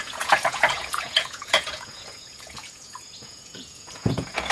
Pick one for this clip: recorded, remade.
remade